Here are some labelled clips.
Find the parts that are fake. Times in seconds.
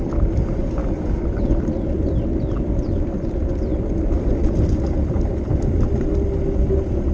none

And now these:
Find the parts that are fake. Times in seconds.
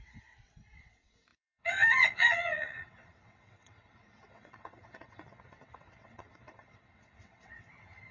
0.0-8.1 (vocoder, WaveNeXt)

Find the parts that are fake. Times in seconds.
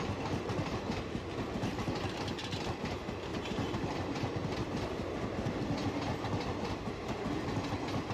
3.3-4.3 (vocoder, BigVGAN v2)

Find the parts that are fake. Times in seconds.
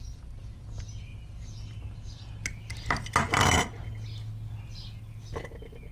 none